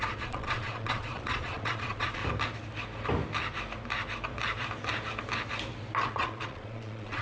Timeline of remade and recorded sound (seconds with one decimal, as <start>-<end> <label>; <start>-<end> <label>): 0.0-2.2 remade; 2.2-6.1 recorded; 6.1-7.2 remade